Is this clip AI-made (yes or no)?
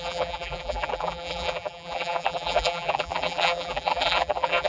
yes